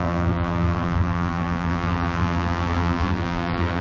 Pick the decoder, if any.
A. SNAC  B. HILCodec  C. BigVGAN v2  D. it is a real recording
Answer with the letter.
C